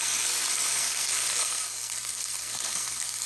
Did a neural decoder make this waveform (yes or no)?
yes